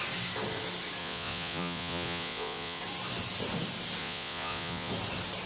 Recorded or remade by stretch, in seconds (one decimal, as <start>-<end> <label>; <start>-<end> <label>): 0.0-1.0 recorded; 1.0-2.8 remade; 2.8-4.0 recorded; 4.0-4.9 remade; 4.9-5.5 recorded